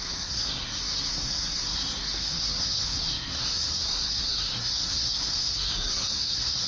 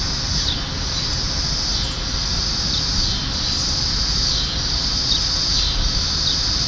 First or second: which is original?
second